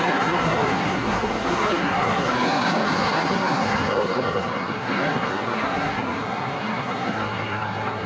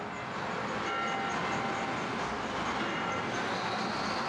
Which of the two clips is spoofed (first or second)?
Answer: first